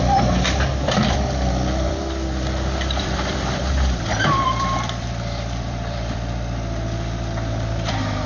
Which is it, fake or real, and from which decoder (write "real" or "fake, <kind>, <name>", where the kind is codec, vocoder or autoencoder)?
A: fake, vocoder, BigVGAN v2